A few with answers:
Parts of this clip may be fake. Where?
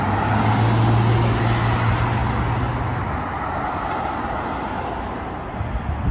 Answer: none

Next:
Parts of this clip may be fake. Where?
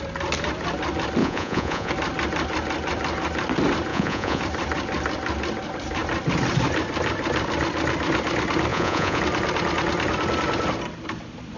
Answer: 1.2-1.9 (vocoder, Vocos); 3.9-4.4; 8.7-9.2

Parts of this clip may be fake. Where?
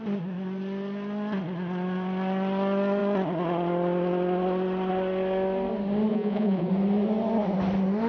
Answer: 6.1-6.7 (vocoder, Vocos)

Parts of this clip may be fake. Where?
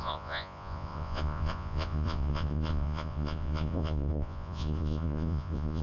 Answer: 0.0-5.8 (vocoder, Vocos)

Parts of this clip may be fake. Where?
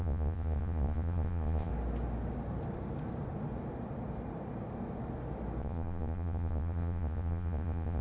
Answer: 0.0-1.7 (vocoder, Vocos); 5.6-8.0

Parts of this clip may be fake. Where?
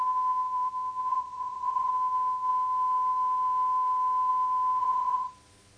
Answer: 1.1-1.9 (vocoder, Vocos); 4.8-5.8